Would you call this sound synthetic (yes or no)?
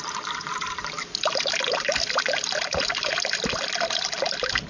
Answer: no